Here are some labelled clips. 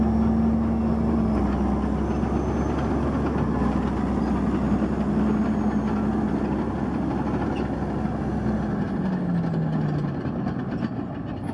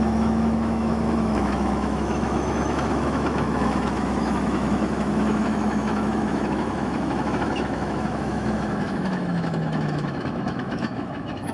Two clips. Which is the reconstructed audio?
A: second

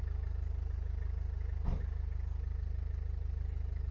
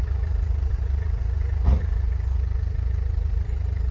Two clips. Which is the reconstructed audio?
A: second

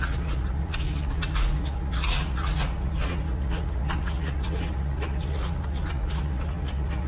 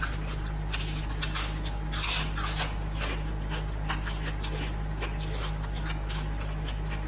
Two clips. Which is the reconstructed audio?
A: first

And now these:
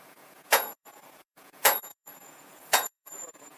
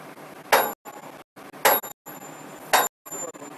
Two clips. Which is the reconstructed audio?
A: first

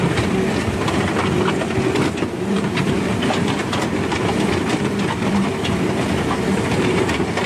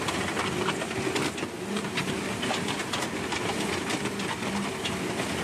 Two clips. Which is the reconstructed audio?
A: first